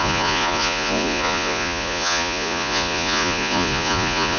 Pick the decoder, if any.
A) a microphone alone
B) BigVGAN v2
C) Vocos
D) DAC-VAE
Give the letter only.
C